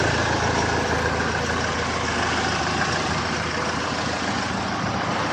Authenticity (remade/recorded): recorded